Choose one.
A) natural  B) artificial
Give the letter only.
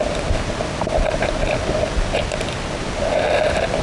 A